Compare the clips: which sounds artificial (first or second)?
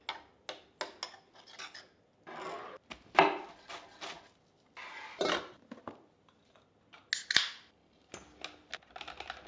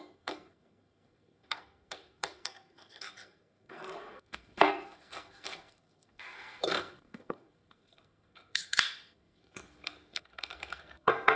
second